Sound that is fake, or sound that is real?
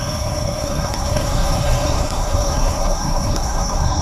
fake